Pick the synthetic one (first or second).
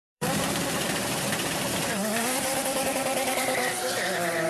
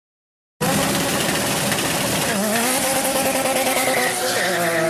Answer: first